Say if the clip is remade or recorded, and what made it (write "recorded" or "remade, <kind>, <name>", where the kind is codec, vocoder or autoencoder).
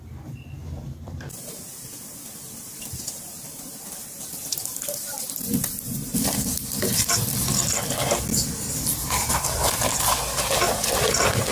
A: remade, vocoder, BigVGAN v2